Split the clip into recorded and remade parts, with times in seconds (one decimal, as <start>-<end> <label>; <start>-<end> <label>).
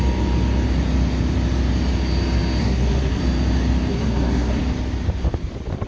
0.0-2.6 recorded; 2.6-3.2 remade; 3.2-3.9 recorded; 3.9-4.6 remade; 4.6-5.9 recorded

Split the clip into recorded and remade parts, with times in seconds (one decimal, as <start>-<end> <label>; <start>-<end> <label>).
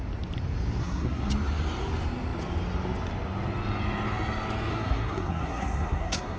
0.0-0.8 recorded; 0.8-1.3 remade; 1.3-4.7 recorded; 4.7-6.4 remade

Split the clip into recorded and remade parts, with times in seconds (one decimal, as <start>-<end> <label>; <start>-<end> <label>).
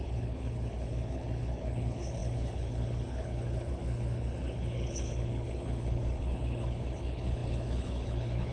0.0-8.5 remade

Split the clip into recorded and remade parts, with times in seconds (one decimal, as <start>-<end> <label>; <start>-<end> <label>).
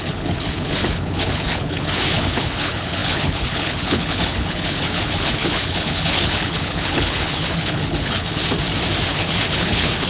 0.0-8.4 remade; 8.4-9.1 recorded; 9.1-10.1 remade